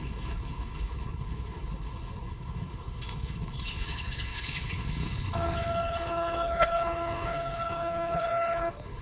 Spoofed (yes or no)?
yes